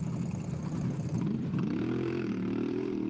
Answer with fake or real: fake